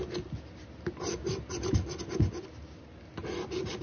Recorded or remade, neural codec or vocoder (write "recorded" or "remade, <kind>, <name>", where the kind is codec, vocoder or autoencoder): recorded